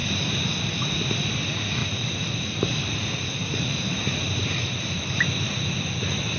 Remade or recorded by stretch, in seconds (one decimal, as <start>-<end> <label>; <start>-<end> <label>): 0.0-1.0 remade; 1.0-1.8 recorded; 1.8-5.5 remade; 5.5-6.4 recorded